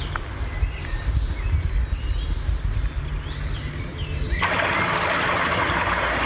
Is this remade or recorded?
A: recorded